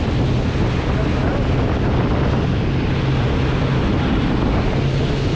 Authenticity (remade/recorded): recorded